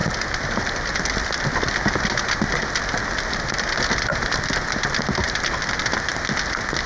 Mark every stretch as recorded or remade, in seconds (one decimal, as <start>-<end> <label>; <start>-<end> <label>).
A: 0.0-6.9 recorded